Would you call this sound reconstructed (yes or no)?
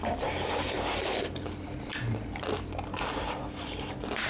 no